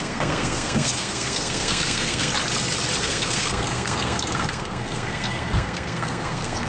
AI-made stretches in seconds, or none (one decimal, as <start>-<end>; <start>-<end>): 0.0-2.3; 3.0-6.7